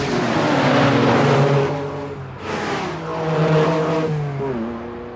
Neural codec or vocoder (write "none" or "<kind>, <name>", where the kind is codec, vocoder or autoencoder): none